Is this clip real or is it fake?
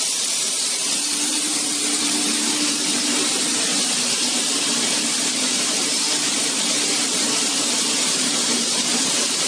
fake